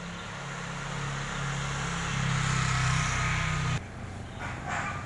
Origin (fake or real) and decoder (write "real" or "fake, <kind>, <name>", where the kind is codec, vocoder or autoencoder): real